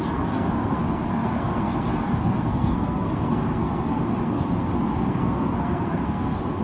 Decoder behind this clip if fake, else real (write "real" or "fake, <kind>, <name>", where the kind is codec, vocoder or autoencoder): fake, codec, SNAC